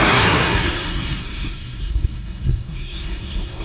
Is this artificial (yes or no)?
yes